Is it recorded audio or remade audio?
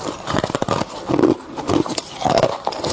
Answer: recorded